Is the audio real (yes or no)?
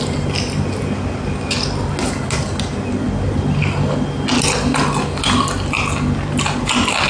yes